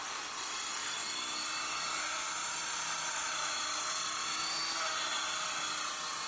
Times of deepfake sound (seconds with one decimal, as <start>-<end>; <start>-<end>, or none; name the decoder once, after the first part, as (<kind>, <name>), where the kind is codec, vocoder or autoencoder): none